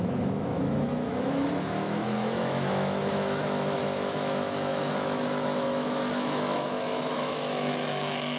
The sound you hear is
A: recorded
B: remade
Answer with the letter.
B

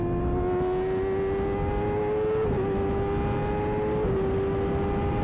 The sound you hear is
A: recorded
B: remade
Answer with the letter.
A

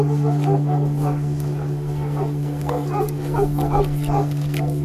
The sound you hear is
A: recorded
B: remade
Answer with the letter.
B